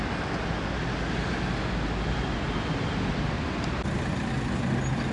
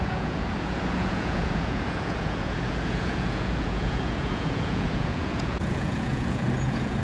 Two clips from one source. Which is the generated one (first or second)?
second